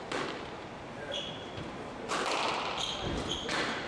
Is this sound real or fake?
fake